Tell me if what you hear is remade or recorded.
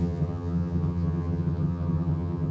remade